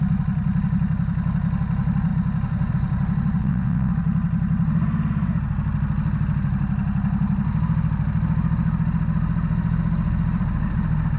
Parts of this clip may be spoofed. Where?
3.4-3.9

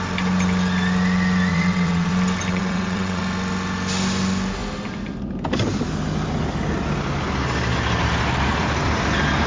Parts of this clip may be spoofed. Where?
1.5-2.1; 2.5-3.2

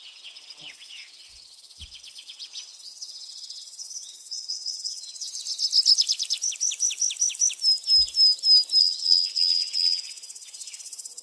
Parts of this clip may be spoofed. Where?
0.0-5.3; 8.8-11.2

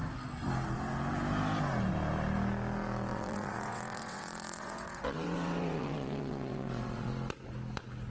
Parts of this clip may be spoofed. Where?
3.1-7.1